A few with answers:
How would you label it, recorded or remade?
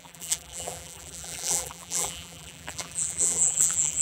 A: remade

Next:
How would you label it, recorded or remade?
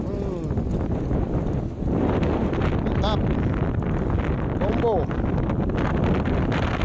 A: recorded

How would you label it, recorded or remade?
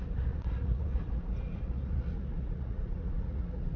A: remade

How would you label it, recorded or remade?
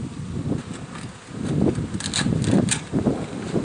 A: recorded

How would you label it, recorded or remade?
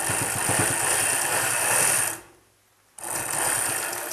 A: recorded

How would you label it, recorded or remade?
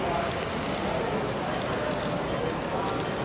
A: recorded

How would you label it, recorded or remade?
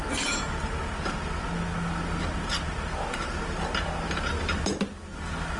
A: recorded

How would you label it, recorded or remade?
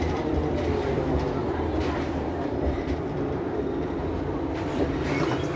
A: remade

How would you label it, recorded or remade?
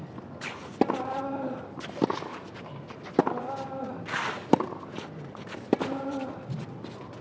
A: recorded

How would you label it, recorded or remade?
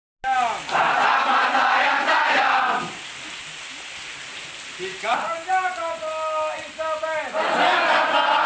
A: recorded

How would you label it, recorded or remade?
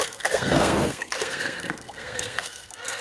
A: remade